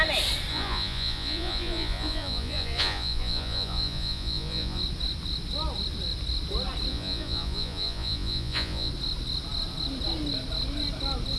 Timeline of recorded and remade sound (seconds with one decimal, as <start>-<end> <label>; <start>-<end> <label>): 0.0-0.5 recorded; 0.5-4.8 remade; 4.8-6.9 recorded; 6.9-8.9 remade; 8.9-11.4 recorded